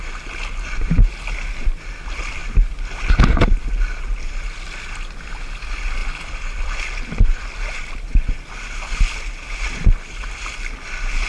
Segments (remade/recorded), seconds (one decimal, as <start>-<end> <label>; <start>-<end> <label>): 0.0-11.3 recorded

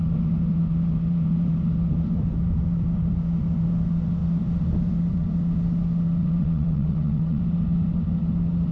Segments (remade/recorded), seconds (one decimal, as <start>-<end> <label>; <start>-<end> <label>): 0.0-6.2 recorded; 6.2-7.4 remade; 7.4-8.7 recorded